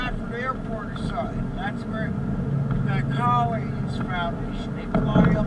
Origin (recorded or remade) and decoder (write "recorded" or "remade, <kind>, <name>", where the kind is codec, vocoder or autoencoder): recorded